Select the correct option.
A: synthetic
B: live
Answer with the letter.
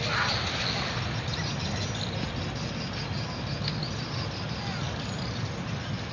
B